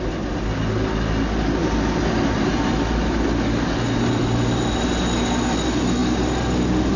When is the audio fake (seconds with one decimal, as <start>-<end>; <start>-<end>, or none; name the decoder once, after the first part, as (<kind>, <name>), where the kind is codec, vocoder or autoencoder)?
none